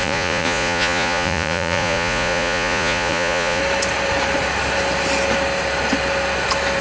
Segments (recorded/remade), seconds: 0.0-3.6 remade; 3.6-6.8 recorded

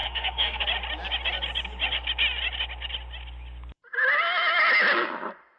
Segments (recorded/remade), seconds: 0.0-0.6 remade; 0.6-5.6 recorded

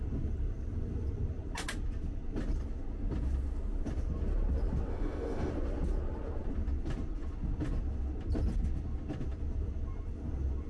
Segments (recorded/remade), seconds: 0.0-4.9 recorded; 4.9-5.5 remade; 5.5-10.7 recorded

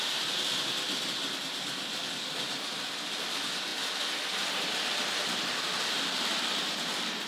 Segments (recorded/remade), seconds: 0.0-7.3 recorded

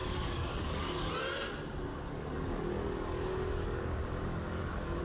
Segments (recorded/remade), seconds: 0.0-1.1 remade; 1.1-1.9 recorded; 1.9-5.0 remade